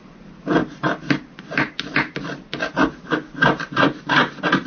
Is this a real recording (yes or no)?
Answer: yes